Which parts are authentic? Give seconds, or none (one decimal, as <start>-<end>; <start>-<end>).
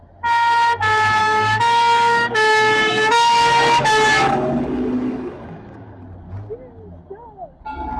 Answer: 0.0-1.2; 6.0-8.0